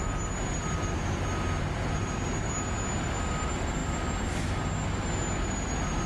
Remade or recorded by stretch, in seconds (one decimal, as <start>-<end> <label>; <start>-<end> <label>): 0.0-6.1 recorded